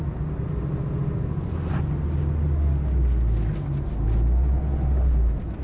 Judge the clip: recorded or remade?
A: recorded